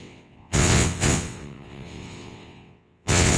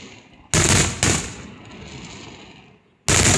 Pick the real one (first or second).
second